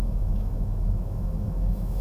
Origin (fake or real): fake